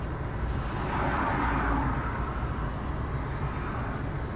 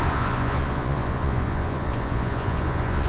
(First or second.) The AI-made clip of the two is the second